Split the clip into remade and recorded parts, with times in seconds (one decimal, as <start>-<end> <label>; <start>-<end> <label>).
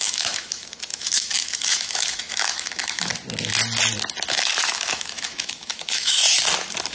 0.0-3.1 remade; 3.1-4.3 recorded; 4.3-6.2 remade; 6.2-6.9 recorded